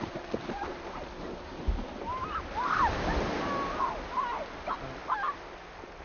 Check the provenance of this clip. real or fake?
real